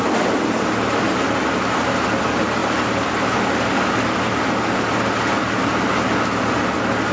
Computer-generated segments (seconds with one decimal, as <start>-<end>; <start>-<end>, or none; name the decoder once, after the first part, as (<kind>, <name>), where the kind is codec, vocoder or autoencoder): none